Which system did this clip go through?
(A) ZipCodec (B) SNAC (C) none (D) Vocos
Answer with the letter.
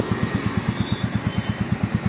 C